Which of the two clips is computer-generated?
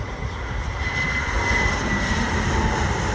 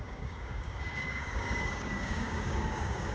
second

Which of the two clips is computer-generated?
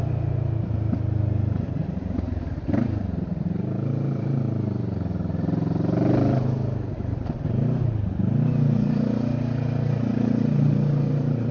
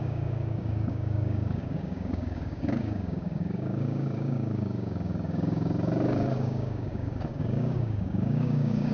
second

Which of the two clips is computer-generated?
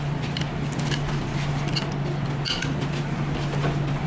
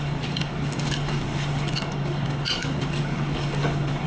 second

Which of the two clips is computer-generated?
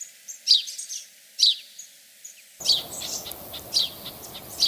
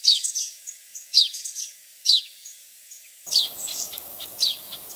second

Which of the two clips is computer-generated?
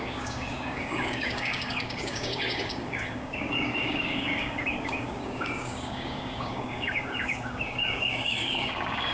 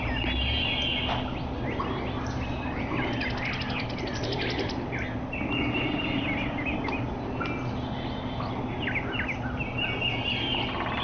first